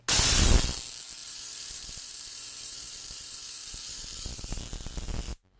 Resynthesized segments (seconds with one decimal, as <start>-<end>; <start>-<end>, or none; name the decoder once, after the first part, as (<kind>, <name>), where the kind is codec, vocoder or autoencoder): 1.2-4.6 (vocoder, BigVGAN v2)